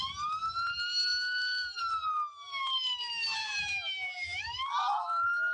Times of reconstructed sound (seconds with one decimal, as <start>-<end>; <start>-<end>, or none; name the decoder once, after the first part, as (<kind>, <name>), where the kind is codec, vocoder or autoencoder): 3.4-4.4 (vocoder, BigVGAN v2)